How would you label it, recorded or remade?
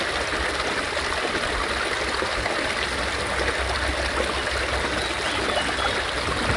recorded